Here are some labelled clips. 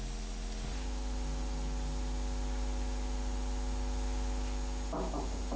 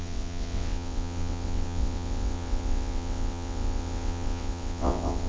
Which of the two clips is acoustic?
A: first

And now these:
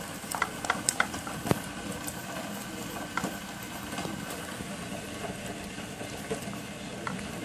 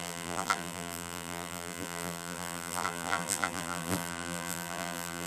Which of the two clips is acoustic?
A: first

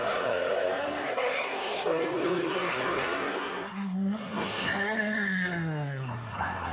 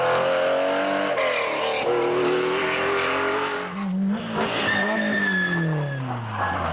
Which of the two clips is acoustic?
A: second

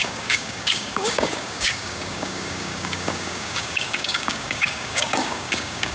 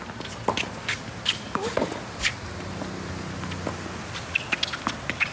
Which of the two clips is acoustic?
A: second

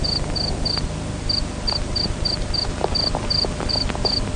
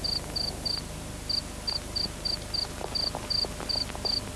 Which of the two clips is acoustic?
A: second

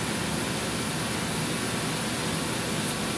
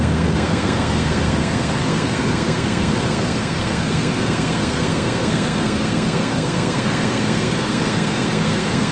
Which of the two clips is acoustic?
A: first